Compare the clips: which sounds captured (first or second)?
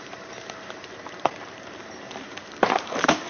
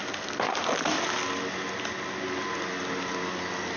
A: second